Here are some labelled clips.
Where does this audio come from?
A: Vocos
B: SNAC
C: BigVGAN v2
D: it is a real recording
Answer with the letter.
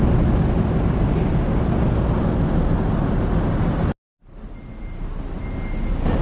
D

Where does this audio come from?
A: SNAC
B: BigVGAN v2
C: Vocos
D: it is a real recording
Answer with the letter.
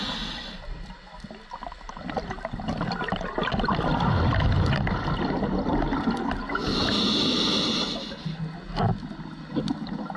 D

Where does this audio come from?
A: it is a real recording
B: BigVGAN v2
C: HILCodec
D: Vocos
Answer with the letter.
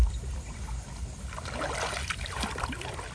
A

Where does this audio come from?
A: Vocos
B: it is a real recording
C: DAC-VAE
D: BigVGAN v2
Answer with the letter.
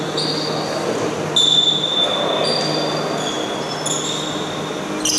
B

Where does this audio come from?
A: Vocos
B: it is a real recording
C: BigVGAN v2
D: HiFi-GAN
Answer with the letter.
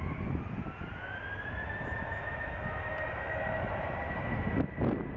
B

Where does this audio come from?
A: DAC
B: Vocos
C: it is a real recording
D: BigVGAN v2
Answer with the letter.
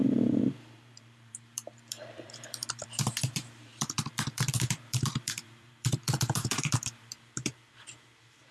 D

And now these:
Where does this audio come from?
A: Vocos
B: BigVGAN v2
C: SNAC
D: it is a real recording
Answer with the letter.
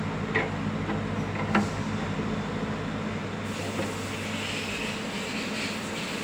D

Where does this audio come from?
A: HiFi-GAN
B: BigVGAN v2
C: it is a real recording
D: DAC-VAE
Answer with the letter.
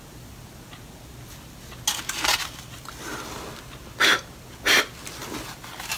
C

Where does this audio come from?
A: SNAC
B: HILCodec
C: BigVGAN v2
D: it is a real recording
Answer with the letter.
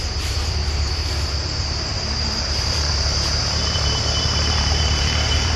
C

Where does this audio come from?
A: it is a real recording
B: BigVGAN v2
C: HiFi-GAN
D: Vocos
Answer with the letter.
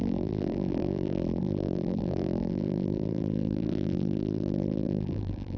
B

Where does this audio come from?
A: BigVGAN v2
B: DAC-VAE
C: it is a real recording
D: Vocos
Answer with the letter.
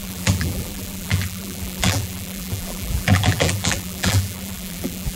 A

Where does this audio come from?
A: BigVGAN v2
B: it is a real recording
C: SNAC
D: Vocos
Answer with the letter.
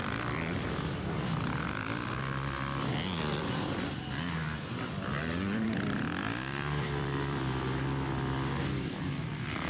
A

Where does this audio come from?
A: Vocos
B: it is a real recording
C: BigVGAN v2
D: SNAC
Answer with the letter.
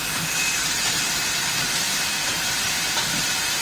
C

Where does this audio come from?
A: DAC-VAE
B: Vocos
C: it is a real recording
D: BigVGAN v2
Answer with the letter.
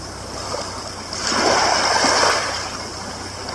C